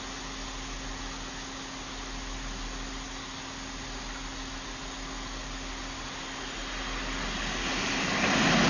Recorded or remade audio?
recorded